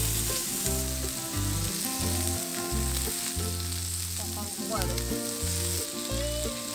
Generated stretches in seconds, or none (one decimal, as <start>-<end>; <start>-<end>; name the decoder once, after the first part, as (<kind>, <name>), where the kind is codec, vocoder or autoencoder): none